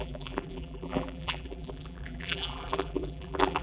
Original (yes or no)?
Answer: no